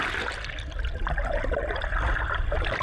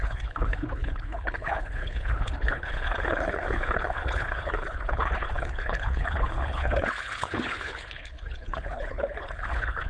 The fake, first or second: second